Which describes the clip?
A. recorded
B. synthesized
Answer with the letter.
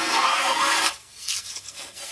B